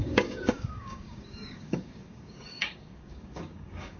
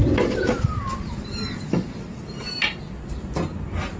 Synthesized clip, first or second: first